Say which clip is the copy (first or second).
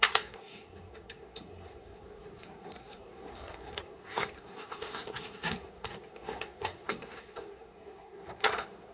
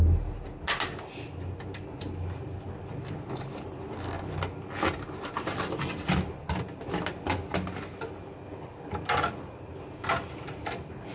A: first